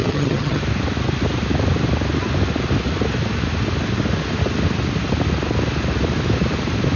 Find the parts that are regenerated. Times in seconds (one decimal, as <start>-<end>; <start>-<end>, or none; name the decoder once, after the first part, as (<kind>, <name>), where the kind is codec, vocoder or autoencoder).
0.0-0.6 (vocoder, HiFi-GAN)